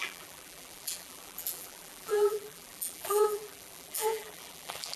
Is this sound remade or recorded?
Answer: remade